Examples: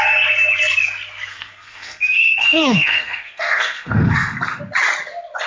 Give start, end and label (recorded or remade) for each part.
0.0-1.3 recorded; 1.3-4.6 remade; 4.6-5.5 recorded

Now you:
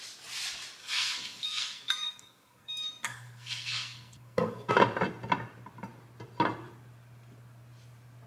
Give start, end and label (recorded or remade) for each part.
0.0-0.8 recorded; 0.8-4.7 remade; 4.7-8.3 recorded

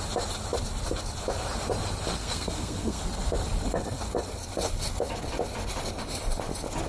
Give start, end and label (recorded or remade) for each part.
0.0-2.2 recorded; 2.2-3.0 remade; 3.0-6.9 recorded

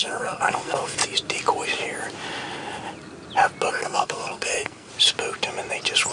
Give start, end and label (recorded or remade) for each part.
0.0-1.0 remade; 1.0-3.7 recorded; 3.7-4.9 remade; 4.9-6.1 recorded

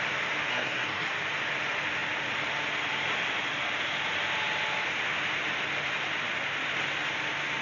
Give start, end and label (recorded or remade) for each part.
0.0-0.5 recorded; 0.5-1.1 remade; 1.1-7.6 recorded